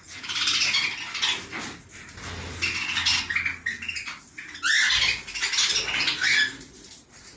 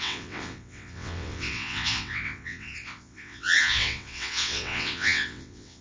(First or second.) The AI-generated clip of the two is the second